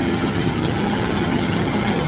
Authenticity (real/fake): fake